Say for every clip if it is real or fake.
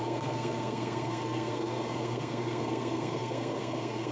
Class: fake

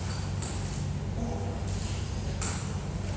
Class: real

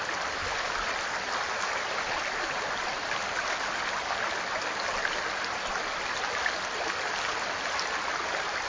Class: real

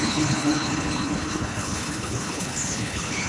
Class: fake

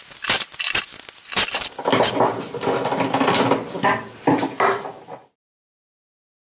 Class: real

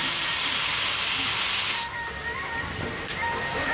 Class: real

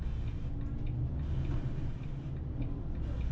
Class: real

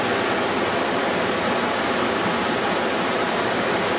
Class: real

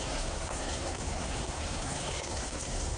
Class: fake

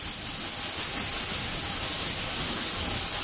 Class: real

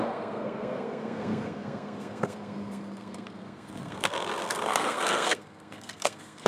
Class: fake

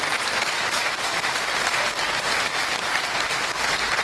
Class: real